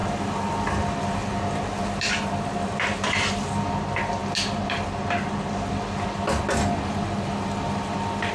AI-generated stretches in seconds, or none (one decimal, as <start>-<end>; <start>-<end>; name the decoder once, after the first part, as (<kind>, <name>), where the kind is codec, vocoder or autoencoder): none